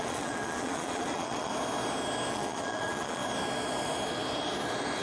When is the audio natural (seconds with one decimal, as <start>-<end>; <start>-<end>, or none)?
1.5-2.3; 3.2-5.0